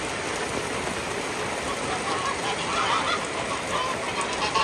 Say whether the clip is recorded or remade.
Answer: recorded